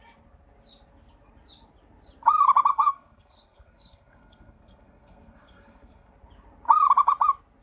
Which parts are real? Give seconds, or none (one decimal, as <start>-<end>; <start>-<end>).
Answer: 0.0-2.7; 6.1-7.6

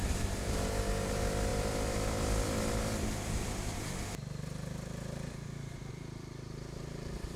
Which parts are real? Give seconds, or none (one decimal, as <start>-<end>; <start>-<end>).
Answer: none

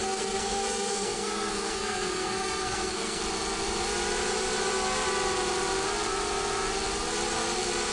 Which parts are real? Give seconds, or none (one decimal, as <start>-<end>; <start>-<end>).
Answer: 3.2-7.9

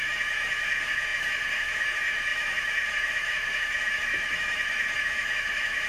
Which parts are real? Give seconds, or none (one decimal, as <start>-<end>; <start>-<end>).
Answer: none

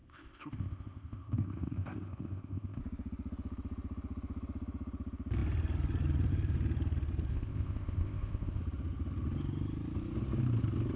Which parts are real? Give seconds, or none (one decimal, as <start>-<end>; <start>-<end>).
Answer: 2.8-7.3; 8.6-11.0